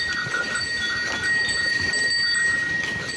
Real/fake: real